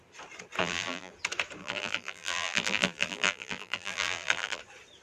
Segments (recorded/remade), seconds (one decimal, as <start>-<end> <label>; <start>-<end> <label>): 0.0-0.6 recorded; 0.6-1.1 remade; 1.1-1.6 recorded; 1.6-4.6 remade; 4.6-5.0 recorded